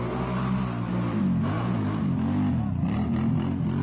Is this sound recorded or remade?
recorded